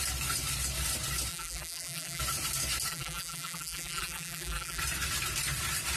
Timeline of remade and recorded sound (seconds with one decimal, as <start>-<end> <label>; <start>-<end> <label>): 0.0-1.3 recorded; 1.3-2.2 remade; 2.2-2.9 recorded; 2.9-4.8 remade; 4.8-6.0 recorded